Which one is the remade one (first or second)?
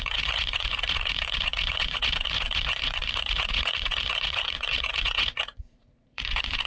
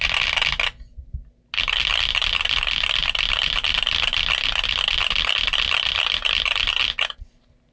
first